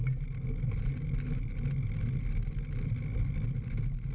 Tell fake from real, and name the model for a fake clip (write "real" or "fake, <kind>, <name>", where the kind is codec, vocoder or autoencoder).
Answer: real